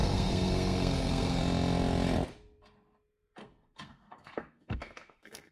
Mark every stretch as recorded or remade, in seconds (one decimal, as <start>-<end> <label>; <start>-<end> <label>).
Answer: 0.0-1.4 remade; 1.4-3.4 recorded; 3.4-5.5 remade